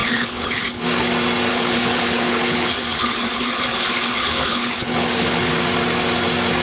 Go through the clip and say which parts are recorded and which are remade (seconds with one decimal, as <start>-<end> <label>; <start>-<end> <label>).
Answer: 0.0-0.8 remade; 0.8-1.5 recorded; 1.5-5.5 remade; 5.5-6.6 recorded